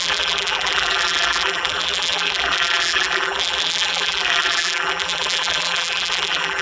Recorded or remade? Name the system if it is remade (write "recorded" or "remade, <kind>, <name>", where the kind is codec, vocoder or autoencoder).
remade, vocoder, BigVGAN v2